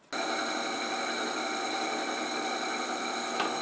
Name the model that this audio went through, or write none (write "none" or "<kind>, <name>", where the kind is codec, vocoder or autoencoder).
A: none